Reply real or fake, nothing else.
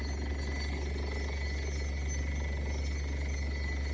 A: real